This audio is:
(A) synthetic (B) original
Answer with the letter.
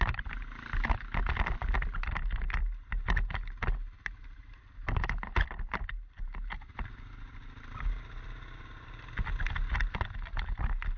B